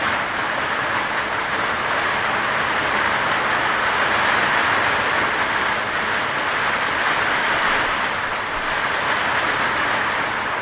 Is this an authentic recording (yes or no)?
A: yes